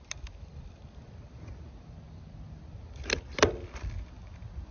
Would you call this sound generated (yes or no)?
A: no